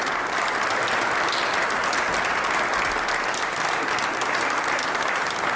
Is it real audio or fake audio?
real